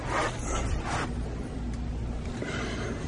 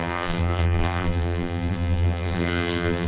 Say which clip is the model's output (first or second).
second